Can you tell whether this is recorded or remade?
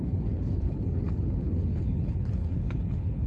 remade